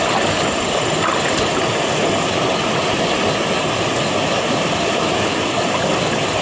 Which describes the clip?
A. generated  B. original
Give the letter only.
B